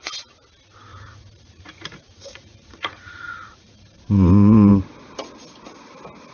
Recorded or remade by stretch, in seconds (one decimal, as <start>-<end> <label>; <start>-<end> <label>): 0.0-0.9 recorded; 0.9-4.7 remade; 4.7-6.3 recorded